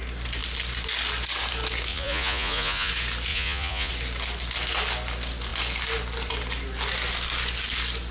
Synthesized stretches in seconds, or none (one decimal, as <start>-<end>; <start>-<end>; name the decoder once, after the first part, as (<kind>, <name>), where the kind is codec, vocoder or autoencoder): 1.9-2.9 (vocoder, Vocos); 3.3-3.9